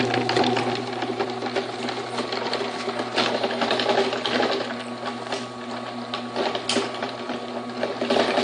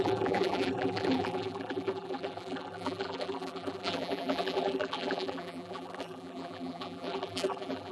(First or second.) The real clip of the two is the first